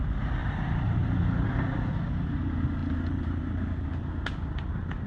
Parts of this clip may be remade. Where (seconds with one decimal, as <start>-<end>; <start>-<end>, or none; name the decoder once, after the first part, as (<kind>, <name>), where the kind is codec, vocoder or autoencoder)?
0.4-1.9 (vocoder, BigVGAN v2)